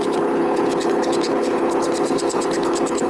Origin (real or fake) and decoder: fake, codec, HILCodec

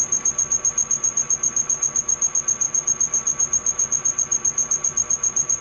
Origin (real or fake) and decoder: real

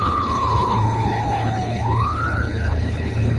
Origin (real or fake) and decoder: fake, codec, HILCodec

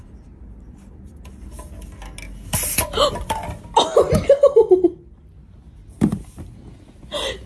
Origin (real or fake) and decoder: real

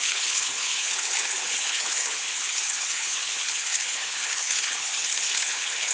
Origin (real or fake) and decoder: fake, codec, HILCodec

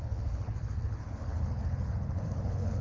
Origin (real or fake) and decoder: fake, codec, HILCodec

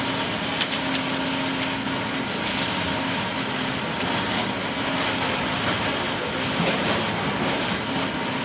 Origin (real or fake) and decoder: real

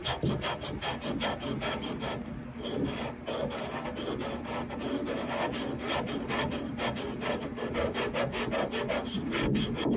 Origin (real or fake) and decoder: real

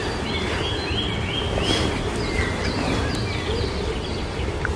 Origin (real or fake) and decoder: real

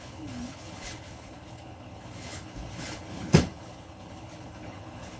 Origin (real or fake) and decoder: fake, codec, HILCodec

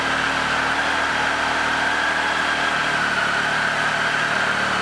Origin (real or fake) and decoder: real